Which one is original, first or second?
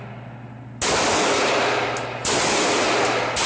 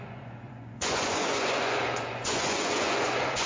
first